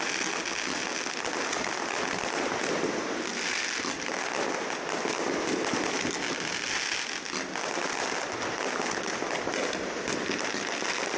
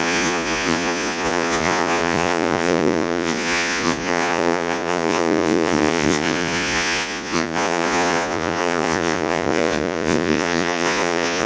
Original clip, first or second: first